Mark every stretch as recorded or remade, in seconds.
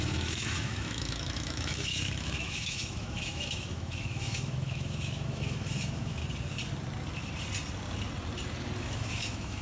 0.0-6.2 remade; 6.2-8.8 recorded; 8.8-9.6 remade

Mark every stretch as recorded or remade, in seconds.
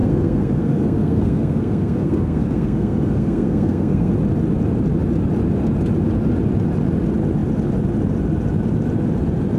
0.0-4.1 remade; 4.1-9.6 recorded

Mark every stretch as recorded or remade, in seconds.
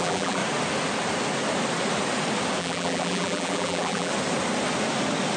0.0-0.4 remade; 0.4-2.6 recorded; 2.6-4.1 remade; 4.1-5.4 recorded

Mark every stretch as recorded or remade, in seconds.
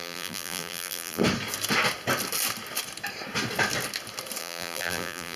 0.0-1.2 remade; 1.2-4.4 recorded; 4.4-5.4 remade